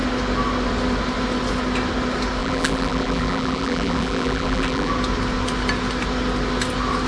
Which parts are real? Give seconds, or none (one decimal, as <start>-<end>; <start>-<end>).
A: 0.0-2.4; 4.9-7.1

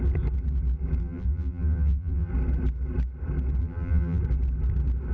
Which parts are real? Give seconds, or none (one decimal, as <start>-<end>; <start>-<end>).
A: 0.0-1.0; 2.3-3.6; 4.2-5.1

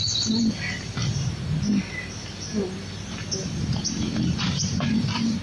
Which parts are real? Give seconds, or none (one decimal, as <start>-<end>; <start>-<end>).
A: 0.0-1.0; 1.7-3.4

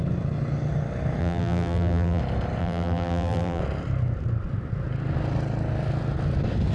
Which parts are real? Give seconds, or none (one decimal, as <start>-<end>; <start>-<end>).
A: 0.0-1.2; 2.2-2.6; 3.6-6.7

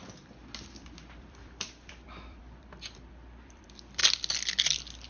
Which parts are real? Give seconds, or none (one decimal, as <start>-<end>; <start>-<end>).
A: 0.0-1.2; 4.0-5.1

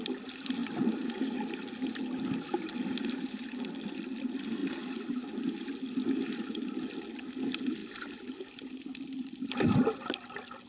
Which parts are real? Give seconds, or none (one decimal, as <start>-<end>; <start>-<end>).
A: 0.0-0.6; 1.2-4.6; 5.3-7.8; 8.7-10.7

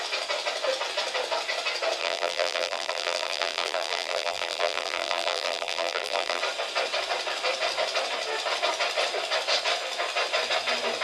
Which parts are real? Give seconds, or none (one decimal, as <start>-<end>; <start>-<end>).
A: 0.0-2.0; 6.4-11.0